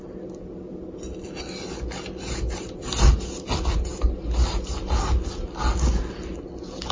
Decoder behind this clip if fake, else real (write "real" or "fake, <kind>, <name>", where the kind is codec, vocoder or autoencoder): real